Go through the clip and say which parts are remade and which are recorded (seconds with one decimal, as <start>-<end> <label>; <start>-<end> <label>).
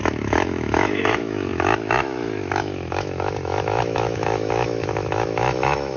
0.0-6.0 remade